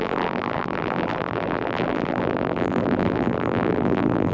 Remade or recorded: remade